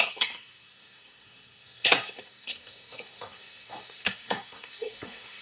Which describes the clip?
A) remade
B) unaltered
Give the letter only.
A